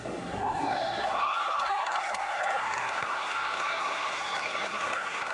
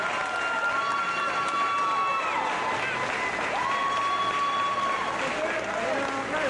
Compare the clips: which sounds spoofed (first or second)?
first